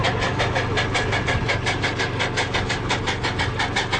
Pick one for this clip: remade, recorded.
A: recorded